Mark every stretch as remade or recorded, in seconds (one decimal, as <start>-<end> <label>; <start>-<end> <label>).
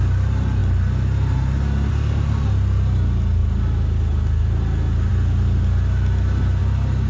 0.0-7.1 recorded